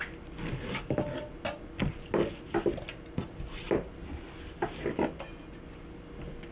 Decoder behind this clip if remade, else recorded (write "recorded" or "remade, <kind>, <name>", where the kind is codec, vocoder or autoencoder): recorded